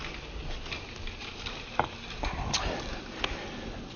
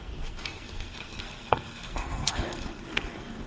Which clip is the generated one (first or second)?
second